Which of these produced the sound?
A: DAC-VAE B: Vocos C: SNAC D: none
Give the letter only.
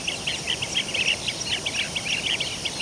D